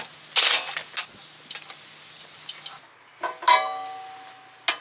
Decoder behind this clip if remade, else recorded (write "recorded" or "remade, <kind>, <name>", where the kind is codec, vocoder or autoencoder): recorded